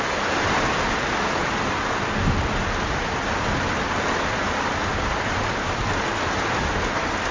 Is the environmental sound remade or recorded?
recorded